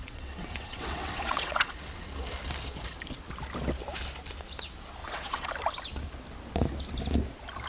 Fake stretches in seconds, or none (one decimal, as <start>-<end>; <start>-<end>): 0.0-1.7; 5.0-5.5